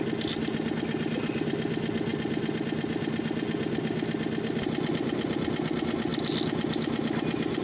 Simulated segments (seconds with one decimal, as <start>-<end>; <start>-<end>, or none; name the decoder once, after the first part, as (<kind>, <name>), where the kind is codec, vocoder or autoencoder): none